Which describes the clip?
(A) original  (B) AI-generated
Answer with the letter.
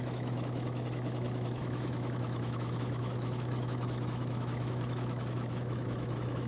B